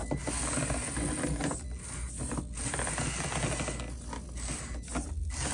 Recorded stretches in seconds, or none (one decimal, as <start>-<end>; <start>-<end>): 0.0-5.5